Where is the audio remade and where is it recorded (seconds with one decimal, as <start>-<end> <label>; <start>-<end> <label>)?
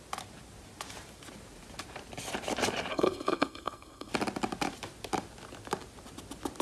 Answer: 0.0-2.9 recorded; 2.9-4.1 remade; 4.1-6.6 recorded